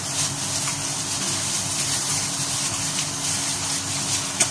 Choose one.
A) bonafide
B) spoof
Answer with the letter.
A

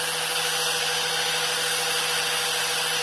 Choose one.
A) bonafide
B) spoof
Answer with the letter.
A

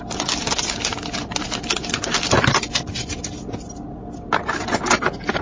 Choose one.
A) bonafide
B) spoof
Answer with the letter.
A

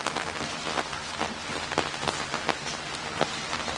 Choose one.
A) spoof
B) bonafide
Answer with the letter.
B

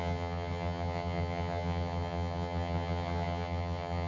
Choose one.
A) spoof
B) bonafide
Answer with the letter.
A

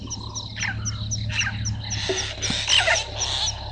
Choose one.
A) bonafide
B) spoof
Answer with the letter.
A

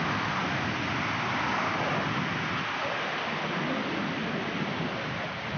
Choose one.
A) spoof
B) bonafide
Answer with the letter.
B